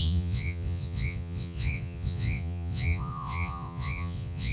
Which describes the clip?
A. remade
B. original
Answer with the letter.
A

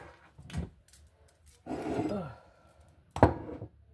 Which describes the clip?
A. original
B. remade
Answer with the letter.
A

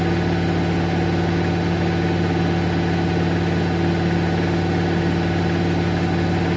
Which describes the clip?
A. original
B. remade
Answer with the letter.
A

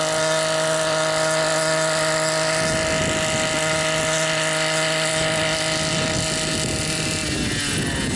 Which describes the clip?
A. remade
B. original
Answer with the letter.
B